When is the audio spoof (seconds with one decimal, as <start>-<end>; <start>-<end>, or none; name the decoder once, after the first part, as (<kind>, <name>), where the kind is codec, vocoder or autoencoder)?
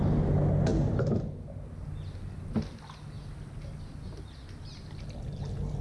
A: none